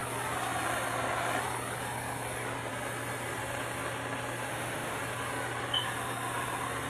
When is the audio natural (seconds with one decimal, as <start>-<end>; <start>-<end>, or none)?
0.0-4.5; 5.0-6.9